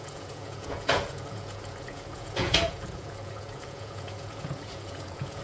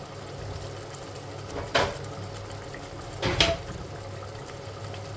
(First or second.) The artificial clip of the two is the first